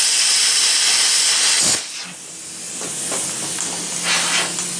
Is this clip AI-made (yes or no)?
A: no